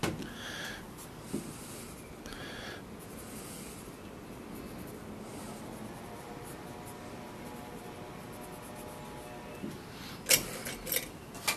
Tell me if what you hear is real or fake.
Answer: real